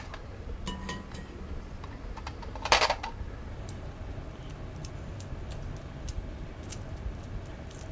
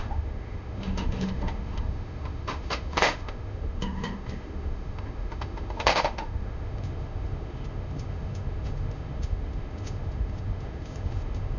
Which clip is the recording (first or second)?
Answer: first